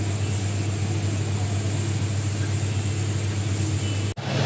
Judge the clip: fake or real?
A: real